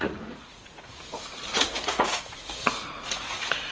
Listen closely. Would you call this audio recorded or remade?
remade